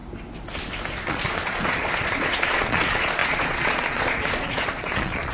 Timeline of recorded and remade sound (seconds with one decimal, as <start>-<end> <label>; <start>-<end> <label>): 0.0-1.1 recorded; 1.1-5.3 remade